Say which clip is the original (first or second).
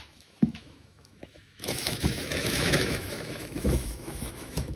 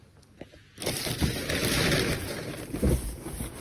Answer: second